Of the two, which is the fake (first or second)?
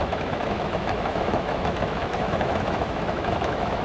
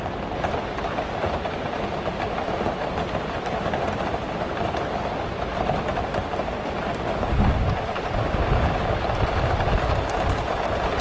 first